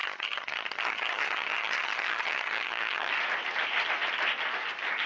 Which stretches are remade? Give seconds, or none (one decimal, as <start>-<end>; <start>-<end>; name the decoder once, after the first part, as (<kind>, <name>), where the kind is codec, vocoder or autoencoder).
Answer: 0.0-3.1 (vocoder, HiFi-GAN)